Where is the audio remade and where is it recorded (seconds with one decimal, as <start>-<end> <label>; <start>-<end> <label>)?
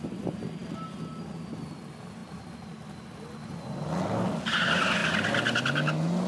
0.0-6.3 recorded